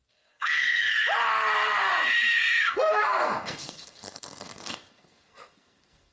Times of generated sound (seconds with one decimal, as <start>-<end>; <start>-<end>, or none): 0.0-0.9; 2.6-6.1

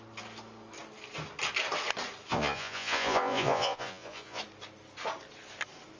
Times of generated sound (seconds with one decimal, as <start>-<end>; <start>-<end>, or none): 2.3-4.4

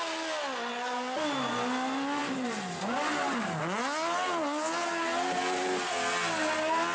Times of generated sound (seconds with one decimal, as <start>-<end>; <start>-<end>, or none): none

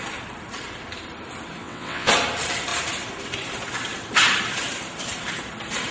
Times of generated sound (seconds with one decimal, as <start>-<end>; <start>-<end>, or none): 1.6-2.1

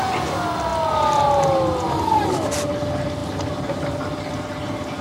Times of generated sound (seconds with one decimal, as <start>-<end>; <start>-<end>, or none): none

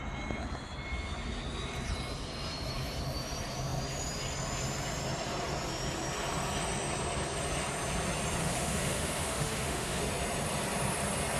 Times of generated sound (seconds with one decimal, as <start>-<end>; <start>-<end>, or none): 8.4-10.0

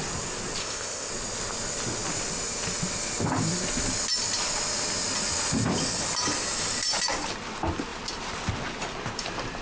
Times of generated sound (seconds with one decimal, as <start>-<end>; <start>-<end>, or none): 0.6-1.1

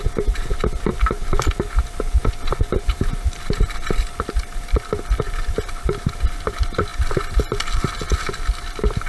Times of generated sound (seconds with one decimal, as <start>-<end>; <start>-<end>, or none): none